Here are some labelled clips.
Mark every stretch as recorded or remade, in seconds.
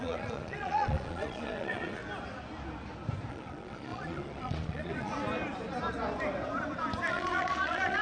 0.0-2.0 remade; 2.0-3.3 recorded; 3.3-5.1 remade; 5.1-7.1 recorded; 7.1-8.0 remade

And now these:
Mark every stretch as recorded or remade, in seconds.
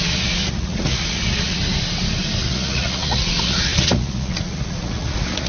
0.0-1.6 remade; 1.6-2.4 recorded; 2.4-5.5 remade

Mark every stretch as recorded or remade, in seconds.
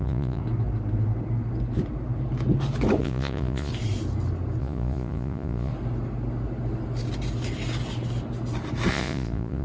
0.0-0.4 remade; 0.4-3.0 recorded; 3.0-3.7 remade; 3.7-4.6 recorded; 4.6-5.7 remade; 5.7-8.9 recorded; 8.9-9.6 remade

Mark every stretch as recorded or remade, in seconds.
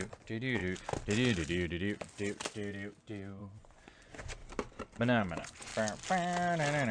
0.0-0.6 remade; 0.6-3.0 recorded; 3.0-4.4 remade; 4.4-5.0 recorded; 5.0-5.7 remade; 5.7-6.9 recorded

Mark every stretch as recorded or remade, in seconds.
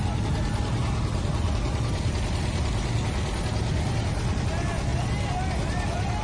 0.0-6.2 recorded